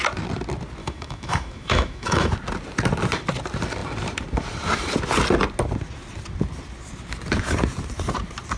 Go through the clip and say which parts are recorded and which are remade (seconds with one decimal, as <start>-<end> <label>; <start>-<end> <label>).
0.0-0.8 recorded; 0.8-2.3 remade; 2.3-8.6 recorded